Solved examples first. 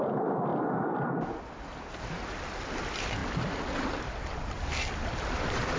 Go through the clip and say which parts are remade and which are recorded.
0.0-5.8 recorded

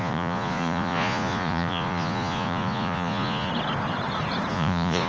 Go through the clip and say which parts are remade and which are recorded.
0.0-3.5 remade; 3.5-4.5 recorded; 4.5-5.1 remade